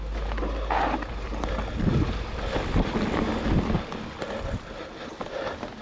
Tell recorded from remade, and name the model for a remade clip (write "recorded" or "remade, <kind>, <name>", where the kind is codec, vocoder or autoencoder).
recorded